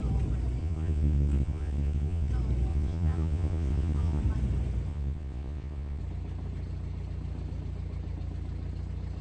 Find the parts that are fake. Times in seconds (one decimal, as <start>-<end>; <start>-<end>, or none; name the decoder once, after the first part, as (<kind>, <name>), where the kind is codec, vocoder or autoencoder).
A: 0.6-2.3 (vocoder, Vocos); 2.7-4.2; 4.9-6.0